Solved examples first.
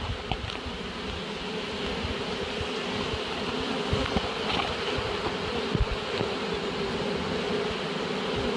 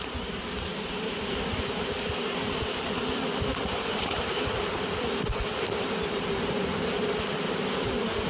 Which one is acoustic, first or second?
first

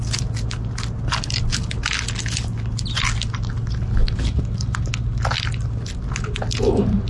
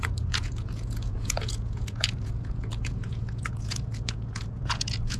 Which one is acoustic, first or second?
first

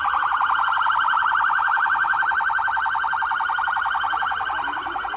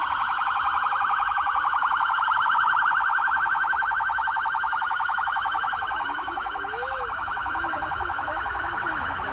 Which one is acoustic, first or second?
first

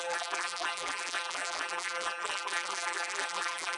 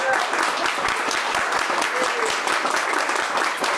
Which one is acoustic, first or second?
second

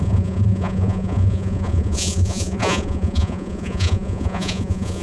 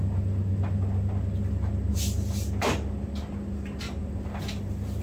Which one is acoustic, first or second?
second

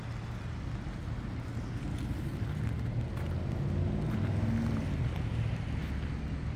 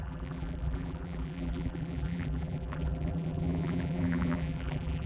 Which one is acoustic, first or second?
first